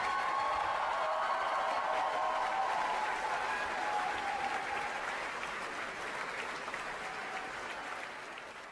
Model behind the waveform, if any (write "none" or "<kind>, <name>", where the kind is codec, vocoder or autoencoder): none